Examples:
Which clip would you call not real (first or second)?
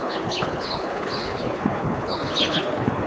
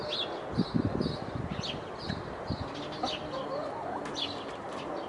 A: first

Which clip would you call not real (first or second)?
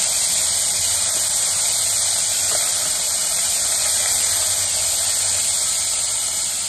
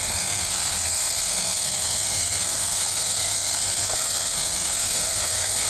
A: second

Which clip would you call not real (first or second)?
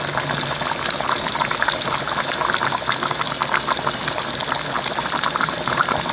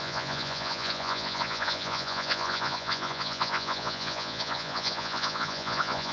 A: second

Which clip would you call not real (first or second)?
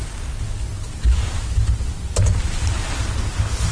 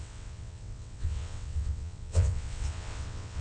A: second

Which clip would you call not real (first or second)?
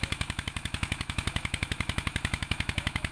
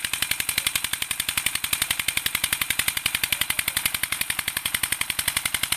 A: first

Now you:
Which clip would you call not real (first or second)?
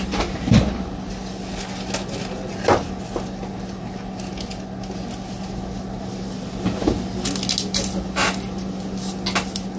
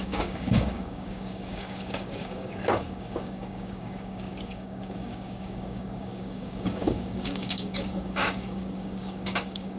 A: second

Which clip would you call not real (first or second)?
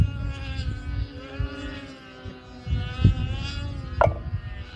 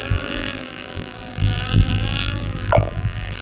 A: second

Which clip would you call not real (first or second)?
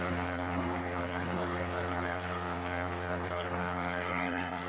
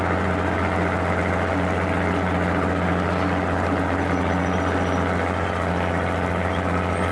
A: first